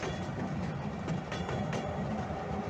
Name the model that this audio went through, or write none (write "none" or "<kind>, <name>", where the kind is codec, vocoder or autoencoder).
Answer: vocoder, BigVGAN v2